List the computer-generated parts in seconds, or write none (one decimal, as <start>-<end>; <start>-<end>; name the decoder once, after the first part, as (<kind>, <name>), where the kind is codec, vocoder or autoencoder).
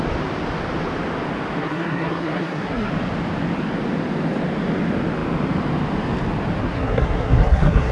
1.6-2.9 (codec, SNAC); 6.6-7.9